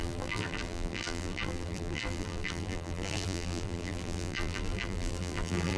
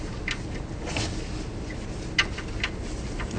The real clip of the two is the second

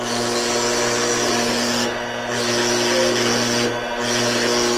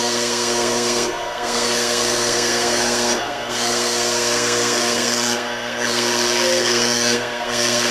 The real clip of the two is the first